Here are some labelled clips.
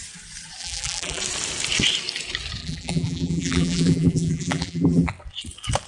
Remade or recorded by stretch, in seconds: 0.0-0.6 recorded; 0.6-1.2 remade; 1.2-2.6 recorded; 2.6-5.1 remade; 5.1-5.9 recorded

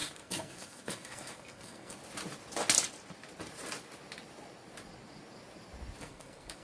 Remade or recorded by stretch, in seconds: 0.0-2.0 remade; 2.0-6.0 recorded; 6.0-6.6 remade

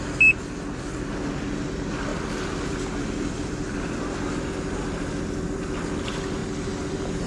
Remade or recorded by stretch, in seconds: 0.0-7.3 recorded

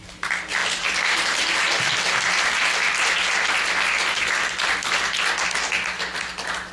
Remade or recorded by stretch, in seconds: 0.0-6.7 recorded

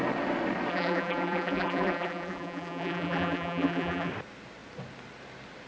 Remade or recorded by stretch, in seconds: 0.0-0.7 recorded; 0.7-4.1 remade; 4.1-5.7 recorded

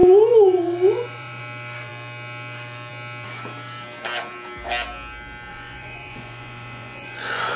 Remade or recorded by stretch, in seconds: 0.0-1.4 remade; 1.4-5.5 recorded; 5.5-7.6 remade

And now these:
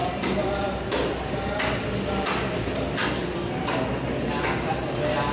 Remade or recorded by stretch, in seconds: 0.0-5.3 recorded